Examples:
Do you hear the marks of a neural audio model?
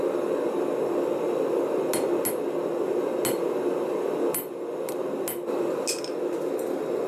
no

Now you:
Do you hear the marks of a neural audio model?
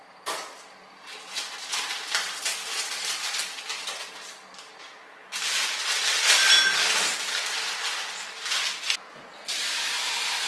no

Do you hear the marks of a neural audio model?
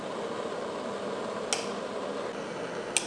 no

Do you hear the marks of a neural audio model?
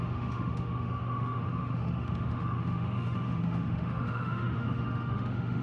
yes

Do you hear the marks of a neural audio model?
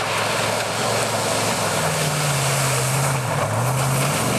no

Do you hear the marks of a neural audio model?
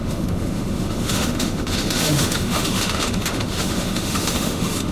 yes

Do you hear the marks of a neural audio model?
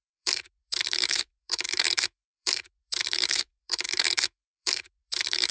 yes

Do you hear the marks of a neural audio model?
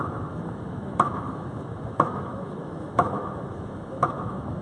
yes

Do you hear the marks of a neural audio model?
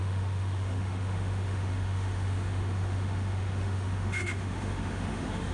yes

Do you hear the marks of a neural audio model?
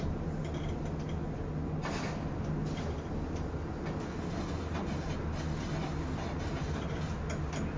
no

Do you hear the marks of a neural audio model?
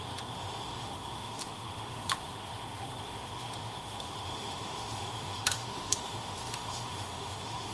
yes